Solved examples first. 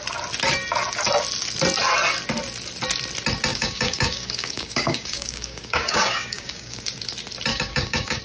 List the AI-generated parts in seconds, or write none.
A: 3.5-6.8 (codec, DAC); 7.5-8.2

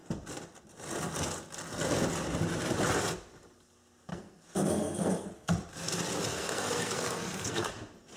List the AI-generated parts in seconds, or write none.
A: 4.1-5.5 (codec, SNAC); 6.3-7.7